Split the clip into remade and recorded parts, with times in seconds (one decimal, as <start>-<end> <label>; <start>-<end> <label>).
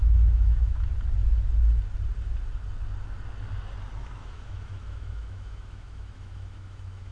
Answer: 0.0-0.9 remade; 0.9-4.0 recorded; 4.0-7.1 remade